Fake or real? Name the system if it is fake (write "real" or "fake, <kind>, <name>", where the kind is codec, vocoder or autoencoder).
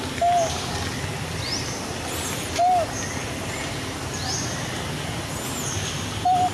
real